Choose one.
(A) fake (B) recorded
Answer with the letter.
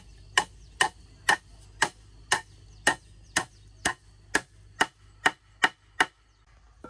B